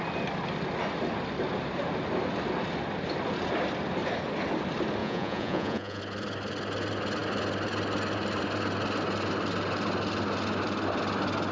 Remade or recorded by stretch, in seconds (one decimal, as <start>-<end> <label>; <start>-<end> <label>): 0.0-5.0 recorded; 5.0-6.0 remade; 6.0-11.5 recorded